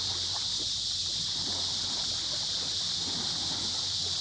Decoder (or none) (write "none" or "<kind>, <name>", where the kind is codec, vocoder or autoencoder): none